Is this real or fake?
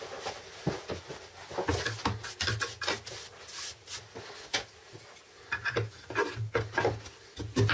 real